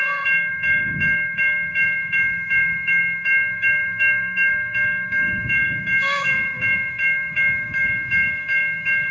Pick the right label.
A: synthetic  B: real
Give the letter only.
A